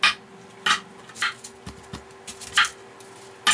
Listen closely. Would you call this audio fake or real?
real